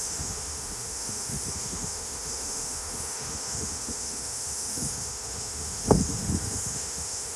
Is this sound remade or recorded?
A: remade